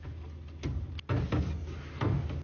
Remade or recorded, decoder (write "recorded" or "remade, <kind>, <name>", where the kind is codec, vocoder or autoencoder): recorded